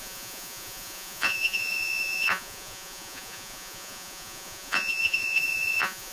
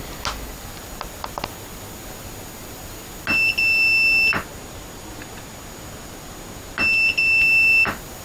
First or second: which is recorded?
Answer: second